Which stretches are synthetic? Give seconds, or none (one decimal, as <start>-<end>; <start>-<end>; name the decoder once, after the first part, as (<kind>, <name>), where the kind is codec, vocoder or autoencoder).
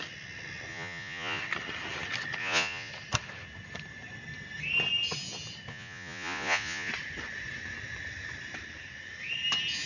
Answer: 0.7-1.4 (vocoder, Vocos); 2.4-2.9; 5.7-6.9